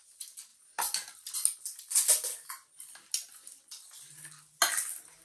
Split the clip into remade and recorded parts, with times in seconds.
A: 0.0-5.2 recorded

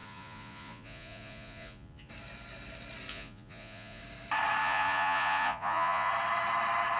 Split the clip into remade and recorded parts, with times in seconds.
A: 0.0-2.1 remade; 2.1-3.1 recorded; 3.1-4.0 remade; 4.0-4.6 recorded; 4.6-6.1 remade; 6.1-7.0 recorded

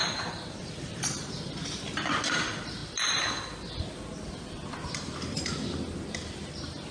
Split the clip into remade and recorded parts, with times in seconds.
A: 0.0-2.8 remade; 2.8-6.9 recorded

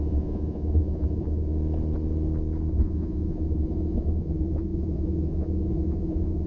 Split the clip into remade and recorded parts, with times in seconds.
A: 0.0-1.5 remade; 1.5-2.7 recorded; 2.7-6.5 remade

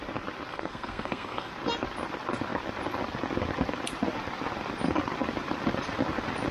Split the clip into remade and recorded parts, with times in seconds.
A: 0.0-0.5 recorded; 0.5-1.5 remade; 1.5-6.5 recorded

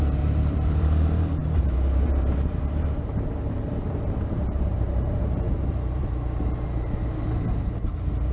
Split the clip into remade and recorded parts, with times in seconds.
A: 0.0-8.3 remade